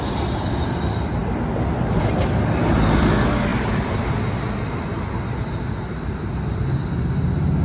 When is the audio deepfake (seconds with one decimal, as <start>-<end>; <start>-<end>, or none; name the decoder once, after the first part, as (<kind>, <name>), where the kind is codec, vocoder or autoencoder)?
3.5-4.1 (vocoder, BigVGAN v2)